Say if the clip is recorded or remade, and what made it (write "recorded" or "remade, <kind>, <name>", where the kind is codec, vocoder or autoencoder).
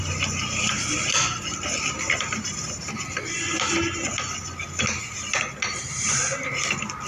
recorded